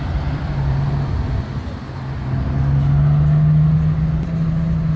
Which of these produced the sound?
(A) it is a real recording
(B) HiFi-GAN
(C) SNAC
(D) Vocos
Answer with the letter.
A